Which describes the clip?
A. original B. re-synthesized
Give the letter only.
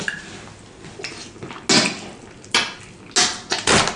A